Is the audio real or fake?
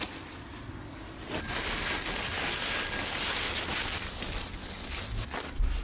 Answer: real